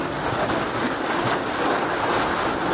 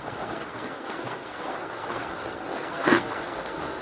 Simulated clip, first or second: second